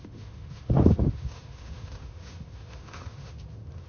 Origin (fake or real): fake